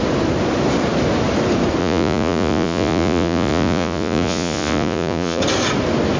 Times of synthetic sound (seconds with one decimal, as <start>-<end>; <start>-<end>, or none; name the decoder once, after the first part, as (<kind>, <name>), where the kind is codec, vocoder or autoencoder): 1.8-5.4 (vocoder, Vocos)